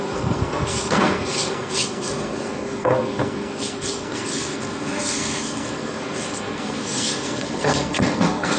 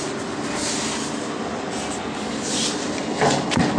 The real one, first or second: second